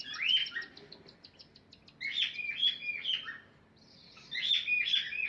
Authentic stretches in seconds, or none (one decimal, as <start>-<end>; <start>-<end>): 0.0-5.3